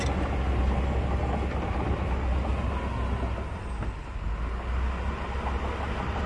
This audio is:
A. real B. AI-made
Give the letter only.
A